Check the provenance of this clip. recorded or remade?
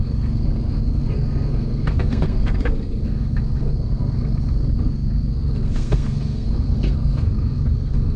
remade